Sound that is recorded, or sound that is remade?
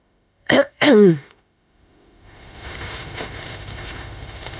remade